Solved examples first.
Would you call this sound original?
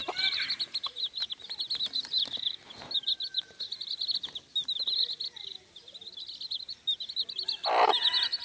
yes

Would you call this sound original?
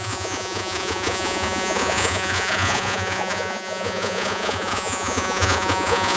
no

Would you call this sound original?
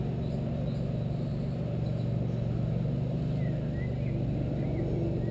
yes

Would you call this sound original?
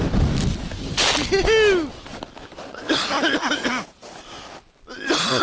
yes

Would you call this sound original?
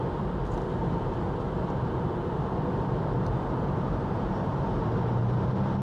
yes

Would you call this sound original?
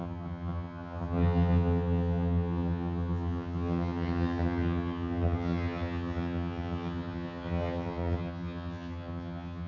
no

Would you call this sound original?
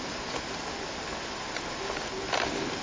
yes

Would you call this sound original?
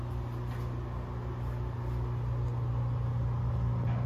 yes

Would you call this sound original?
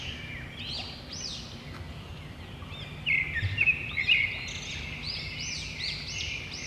yes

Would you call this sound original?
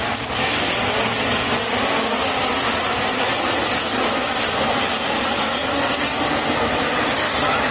yes